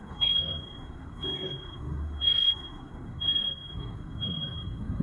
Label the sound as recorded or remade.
remade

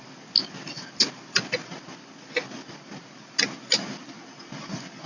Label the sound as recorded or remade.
recorded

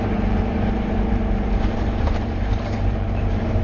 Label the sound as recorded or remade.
remade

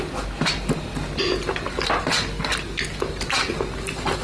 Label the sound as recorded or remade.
recorded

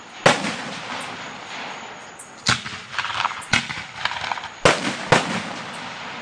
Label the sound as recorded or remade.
recorded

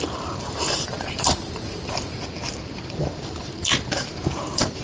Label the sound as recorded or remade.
remade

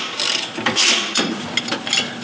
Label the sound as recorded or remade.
recorded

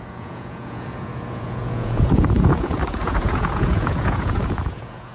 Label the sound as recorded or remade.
remade